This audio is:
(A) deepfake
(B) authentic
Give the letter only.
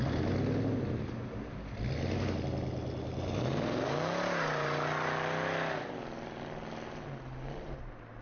B